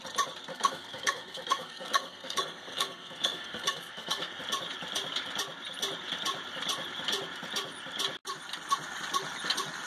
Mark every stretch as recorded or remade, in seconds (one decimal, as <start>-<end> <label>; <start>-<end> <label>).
0.0-0.5 recorded; 0.5-4.4 remade; 4.4-9.9 recorded